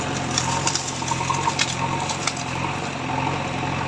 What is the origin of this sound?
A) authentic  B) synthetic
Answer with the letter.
A